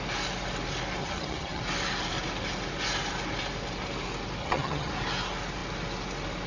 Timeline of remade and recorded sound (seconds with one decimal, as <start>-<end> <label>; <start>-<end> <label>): 0.0-1.0 recorded; 1.0-1.6 remade; 1.6-4.4 recorded; 4.4-4.9 remade; 4.9-6.5 recorded